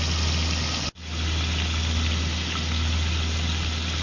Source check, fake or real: real